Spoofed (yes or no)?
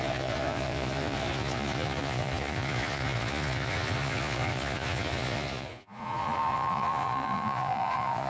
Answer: yes